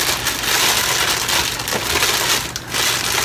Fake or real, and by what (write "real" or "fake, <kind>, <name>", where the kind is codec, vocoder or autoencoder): real